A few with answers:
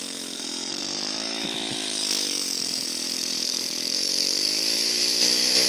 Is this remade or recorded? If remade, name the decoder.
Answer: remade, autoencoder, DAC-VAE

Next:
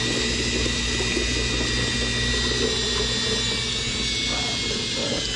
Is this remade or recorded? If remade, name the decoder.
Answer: recorded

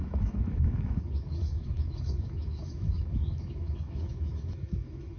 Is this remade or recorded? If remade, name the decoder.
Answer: remade, autoencoder, DAC-VAE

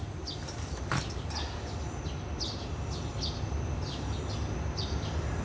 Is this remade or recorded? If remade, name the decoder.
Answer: recorded